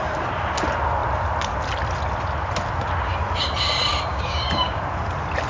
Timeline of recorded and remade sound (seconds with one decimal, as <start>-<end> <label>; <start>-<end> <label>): 0.0-4.1 recorded; 4.1-4.8 remade; 4.8-5.5 recorded

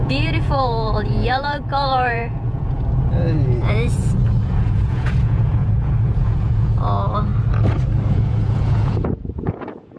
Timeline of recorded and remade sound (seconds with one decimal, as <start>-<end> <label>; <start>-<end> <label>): 0.0-7.3 remade; 7.3-8.1 recorded; 8.1-10.0 remade

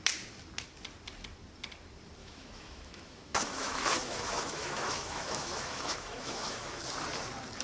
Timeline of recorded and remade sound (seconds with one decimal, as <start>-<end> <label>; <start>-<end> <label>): 0.0-2.2 recorded; 2.2-6.8 remade; 6.8-7.6 recorded

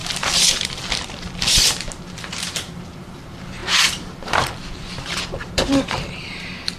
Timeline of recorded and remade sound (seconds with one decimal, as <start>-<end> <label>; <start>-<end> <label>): 0.0-6.8 remade

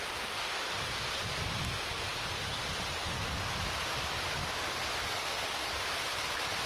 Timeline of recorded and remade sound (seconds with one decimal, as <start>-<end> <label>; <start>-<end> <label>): 0.0-6.7 recorded